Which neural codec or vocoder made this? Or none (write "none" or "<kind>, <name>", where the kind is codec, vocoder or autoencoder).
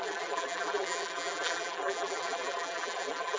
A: vocoder, BigVGAN v2